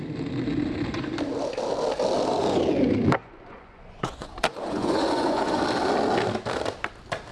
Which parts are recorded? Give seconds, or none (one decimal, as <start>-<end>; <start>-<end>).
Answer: 0.0-3.2; 5.6-7.3